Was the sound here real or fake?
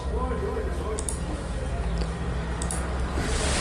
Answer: real